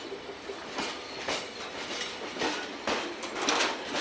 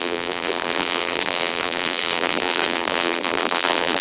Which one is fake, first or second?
second